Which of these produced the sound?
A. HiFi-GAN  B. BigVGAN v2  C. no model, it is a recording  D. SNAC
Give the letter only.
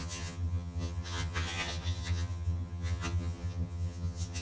A